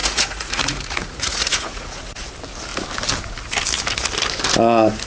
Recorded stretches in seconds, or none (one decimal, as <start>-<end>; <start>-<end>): 2.3-5.1